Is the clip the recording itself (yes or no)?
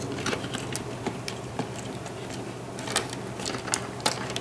yes